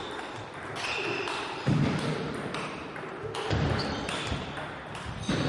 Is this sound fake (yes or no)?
yes